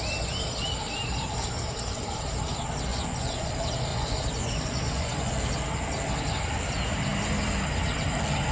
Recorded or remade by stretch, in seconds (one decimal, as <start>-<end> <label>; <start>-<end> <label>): 0.0-2.9 recorded; 2.9-3.5 remade; 3.5-3.9 recorded; 3.9-5.3 remade; 5.3-8.5 recorded